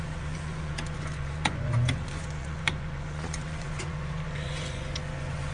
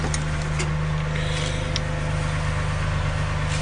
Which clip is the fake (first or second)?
first